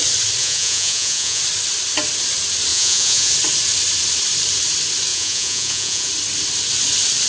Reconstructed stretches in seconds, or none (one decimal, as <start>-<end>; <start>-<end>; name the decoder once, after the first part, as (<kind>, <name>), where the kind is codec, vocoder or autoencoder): 0.4-1.4 (vocoder, Vocos); 2.7-3.3; 5.1-6.1